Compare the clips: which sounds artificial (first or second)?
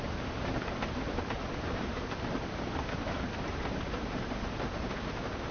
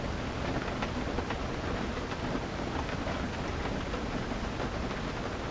first